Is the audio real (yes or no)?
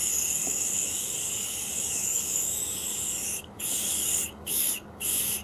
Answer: no